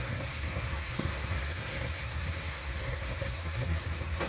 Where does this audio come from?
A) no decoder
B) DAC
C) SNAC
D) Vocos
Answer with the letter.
C